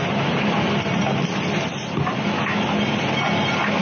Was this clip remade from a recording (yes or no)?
no